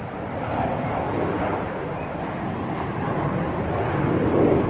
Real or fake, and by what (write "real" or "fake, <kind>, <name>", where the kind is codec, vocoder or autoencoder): real